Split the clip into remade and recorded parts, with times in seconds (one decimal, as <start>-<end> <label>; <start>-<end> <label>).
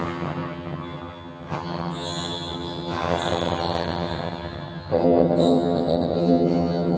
0.0-7.0 remade